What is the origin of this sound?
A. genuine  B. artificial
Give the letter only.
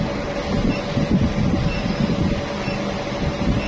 A